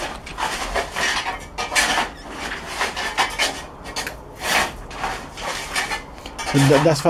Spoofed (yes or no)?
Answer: no